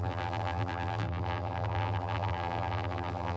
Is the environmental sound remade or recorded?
remade